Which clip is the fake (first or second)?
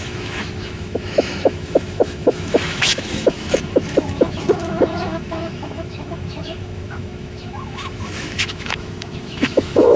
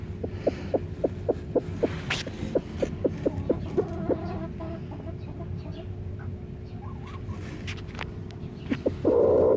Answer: first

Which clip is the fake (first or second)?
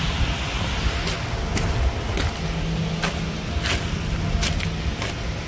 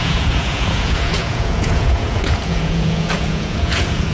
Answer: second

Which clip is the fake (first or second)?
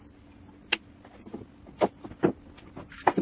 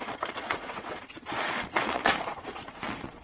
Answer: second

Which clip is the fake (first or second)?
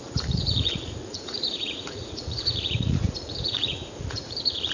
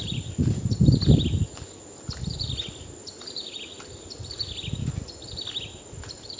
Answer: first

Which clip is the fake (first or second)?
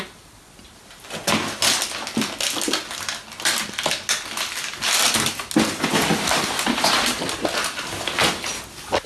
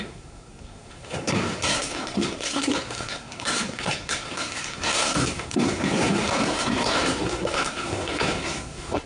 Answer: second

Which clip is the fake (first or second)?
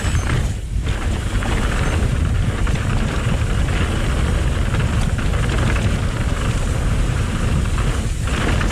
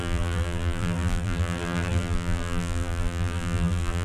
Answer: second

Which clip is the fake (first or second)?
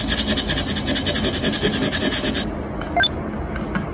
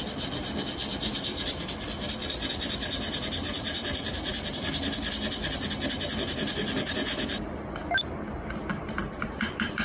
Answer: second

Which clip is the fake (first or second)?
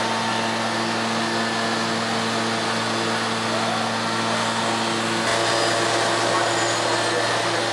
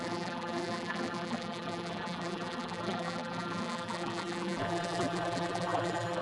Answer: second